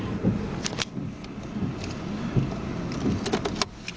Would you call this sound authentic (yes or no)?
yes